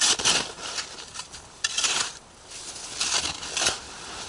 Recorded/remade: recorded